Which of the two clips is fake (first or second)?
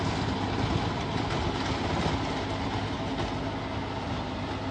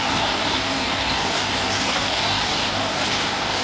second